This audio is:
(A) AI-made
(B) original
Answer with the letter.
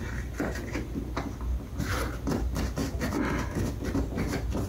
B